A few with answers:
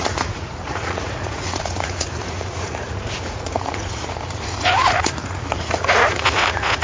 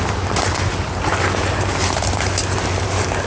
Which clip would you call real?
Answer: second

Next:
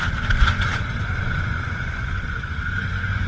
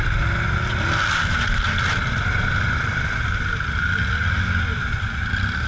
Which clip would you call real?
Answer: second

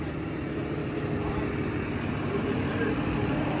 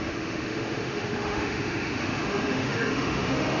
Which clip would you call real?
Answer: first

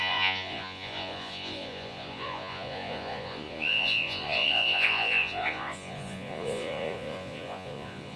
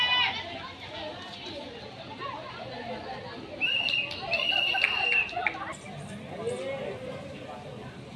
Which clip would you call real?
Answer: second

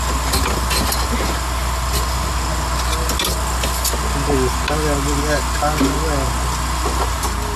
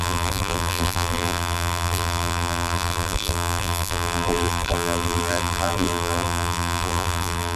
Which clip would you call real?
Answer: first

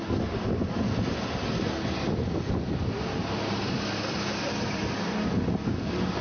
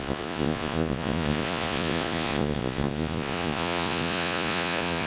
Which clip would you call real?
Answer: first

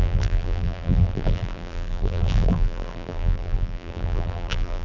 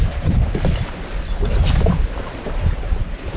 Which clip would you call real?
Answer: second